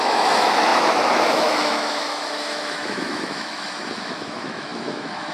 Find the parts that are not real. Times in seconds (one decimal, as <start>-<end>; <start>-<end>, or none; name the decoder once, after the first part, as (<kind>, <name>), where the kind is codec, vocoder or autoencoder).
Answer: 0.0-5.3 (autoencoder, DAC-VAE)